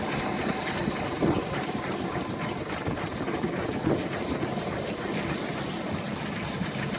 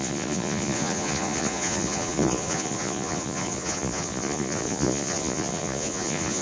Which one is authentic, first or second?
first